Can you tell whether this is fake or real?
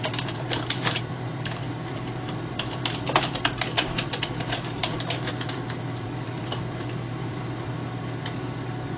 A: fake